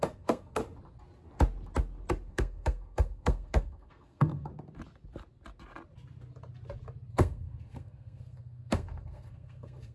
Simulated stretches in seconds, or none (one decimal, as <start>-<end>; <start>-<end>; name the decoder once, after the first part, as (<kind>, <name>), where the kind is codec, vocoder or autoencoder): 0.0-0.6 (codec, SNAC); 2.3-4.5; 7.1-9.9